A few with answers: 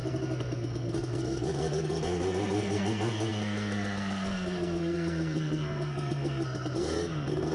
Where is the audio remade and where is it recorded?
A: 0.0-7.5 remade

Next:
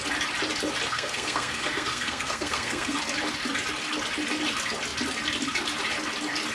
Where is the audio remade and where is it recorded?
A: 0.0-0.9 recorded; 0.9-3.0 remade; 3.0-6.5 recorded

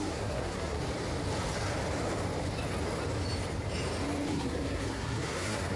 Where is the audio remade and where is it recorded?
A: 0.0-0.8 remade; 0.8-4.3 recorded; 4.3-5.8 remade